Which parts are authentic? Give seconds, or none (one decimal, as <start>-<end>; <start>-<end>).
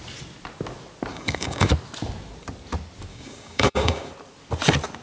0.0-1.1; 1.7-3.1; 4.1-5.0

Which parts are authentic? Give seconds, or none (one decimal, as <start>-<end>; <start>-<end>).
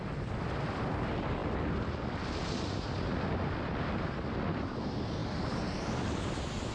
0.0-6.7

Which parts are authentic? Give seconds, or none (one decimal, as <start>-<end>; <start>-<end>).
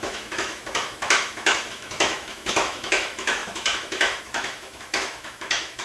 none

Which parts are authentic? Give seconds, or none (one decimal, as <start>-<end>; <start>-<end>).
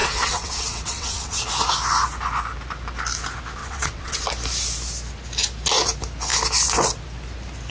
1.4-3.6; 4.2-7.7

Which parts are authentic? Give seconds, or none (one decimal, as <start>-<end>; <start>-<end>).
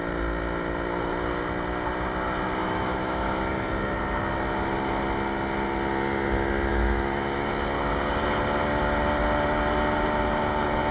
0.0-2.6; 3.5-6.7; 7.5-10.9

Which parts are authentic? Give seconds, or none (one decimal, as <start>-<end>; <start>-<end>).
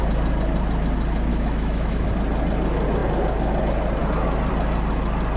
0.0-1.3; 2.1-5.4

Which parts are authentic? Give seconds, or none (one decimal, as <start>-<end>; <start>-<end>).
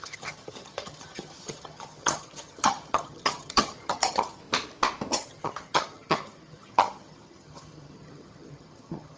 4.4-5.1